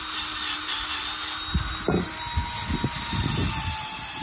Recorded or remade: recorded